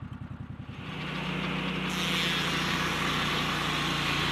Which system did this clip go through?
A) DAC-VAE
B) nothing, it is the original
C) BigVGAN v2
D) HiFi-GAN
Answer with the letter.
B